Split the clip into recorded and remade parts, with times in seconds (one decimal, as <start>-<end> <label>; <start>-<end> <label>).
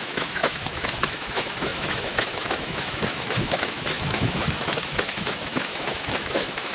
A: 0.0-6.7 remade